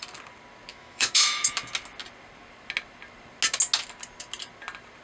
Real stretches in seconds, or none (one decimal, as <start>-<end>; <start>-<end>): 0.0-0.7; 1.5-5.0